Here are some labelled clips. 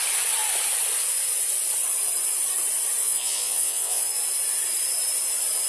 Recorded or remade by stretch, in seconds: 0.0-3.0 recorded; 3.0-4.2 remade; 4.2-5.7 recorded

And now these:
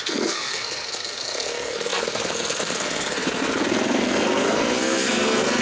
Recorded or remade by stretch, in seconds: 0.0-5.6 remade

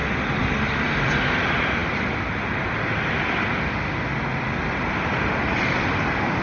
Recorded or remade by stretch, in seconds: 0.0-6.4 recorded